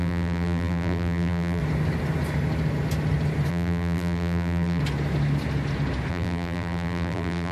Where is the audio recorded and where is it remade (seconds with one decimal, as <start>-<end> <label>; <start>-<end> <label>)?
0.0-1.6 remade; 1.6-3.5 recorded; 3.5-4.8 remade; 4.8-6.1 recorded; 6.1-7.5 remade